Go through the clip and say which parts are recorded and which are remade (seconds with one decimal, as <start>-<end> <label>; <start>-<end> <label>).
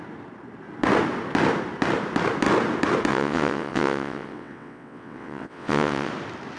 0.0-3.1 recorded; 3.1-6.1 remade; 6.1-6.6 recorded